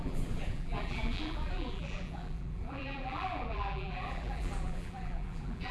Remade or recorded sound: remade